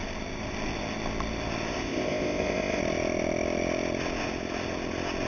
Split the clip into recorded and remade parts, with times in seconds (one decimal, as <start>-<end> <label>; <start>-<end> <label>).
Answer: 0.0-1.7 recorded; 1.7-2.8 remade; 2.8-5.3 recorded